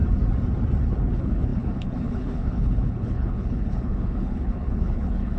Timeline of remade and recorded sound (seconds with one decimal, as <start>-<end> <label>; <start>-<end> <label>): 0.0-0.8 recorded; 0.8-5.4 remade